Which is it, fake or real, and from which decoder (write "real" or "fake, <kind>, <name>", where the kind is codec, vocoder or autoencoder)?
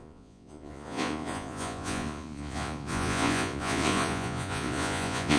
fake, vocoder, Vocos